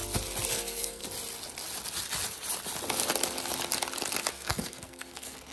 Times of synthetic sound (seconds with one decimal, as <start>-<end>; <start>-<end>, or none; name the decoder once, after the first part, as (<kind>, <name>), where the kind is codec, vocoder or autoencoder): 0.5-1.0 (codec, SNAC); 4.3-5.5